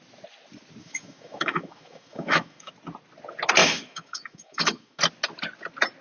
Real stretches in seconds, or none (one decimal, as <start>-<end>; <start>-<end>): 0.0-0.8; 2.7-3.6; 5.0-6.0